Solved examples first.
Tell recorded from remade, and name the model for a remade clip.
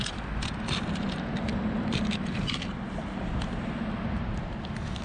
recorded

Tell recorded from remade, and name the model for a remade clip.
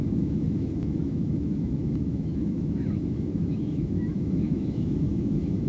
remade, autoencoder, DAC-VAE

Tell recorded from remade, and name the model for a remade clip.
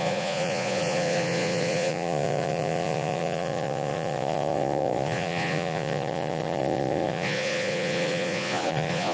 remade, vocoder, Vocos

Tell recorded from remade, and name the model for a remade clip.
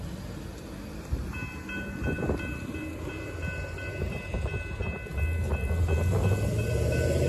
recorded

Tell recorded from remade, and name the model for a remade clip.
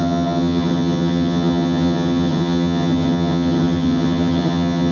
remade, vocoder, HiFi-GAN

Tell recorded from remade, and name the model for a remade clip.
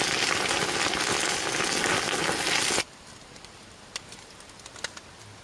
recorded